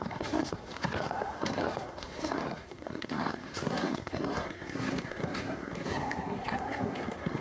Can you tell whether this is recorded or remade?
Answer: remade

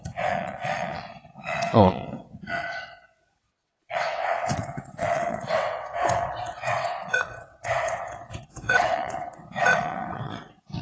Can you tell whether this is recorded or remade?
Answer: remade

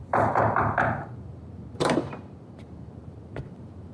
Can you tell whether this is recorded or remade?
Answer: remade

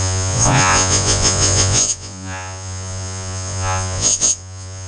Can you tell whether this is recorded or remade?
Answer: remade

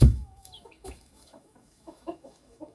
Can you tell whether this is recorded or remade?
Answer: remade